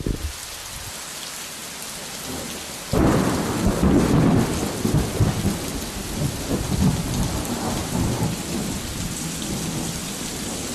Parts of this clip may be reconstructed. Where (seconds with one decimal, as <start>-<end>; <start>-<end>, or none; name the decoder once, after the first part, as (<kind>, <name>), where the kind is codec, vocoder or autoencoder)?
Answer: 7.8-9.0 (vocoder, BigVGAN v2)